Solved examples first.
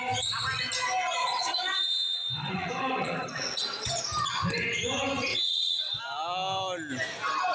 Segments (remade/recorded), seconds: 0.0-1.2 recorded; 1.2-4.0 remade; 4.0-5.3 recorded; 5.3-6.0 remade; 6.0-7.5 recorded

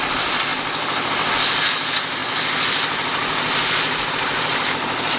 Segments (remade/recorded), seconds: 0.0-5.2 recorded

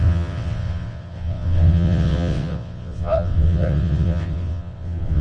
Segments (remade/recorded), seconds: 0.0-5.2 remade

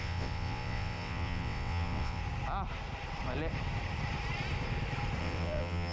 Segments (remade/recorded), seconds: 0.0-2.2 remade; 2.2-5.2 recorded; 5.2-5.9 remade

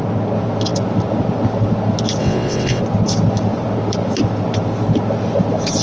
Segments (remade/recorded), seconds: 0.0-2.2 recorded; 2.2-2.8 remade; 2.8-5.8 recorded